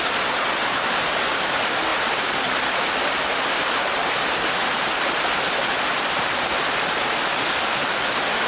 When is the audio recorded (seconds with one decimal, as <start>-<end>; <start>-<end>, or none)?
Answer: 0.0-8.5